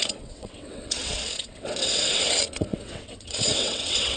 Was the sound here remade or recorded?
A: remade